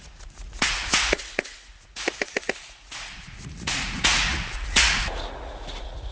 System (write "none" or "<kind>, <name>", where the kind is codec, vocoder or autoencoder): vocoder, Vocos